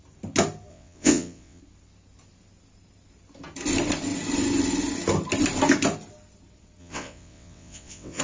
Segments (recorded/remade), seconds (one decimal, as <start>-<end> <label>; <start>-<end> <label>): 0.0-0.7 recorded; 0.7-1.6 remade; 1.6-6.8 recorded; 6.8-8.2 remade